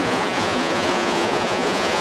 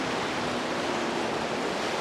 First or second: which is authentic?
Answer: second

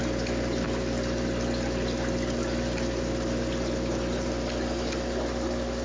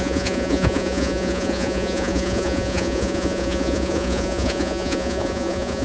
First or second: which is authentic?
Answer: first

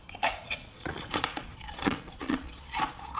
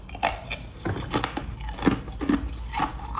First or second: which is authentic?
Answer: second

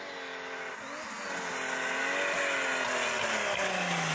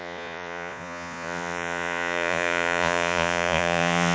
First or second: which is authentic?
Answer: first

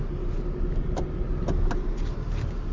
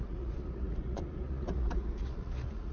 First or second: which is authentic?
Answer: first